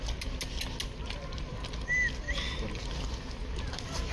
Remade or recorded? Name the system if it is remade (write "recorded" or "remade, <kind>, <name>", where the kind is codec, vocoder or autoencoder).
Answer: recorded